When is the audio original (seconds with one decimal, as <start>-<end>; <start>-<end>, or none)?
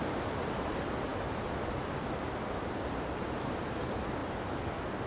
0.0-5.1